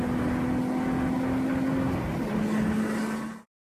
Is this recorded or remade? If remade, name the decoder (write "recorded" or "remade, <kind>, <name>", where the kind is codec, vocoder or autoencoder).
recorded